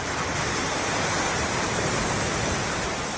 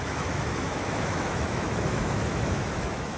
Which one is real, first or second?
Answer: first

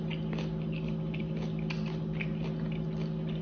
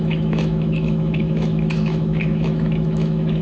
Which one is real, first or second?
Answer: first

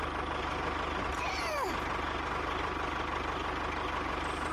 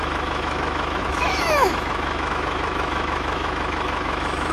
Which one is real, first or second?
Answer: first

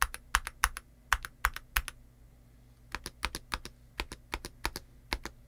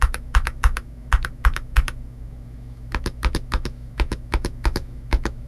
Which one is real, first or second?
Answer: first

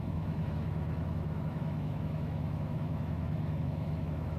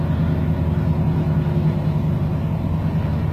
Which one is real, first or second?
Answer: second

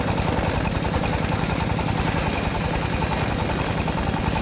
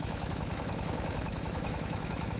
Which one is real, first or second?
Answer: first